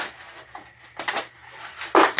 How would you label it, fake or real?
real